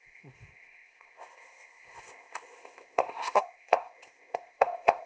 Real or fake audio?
fake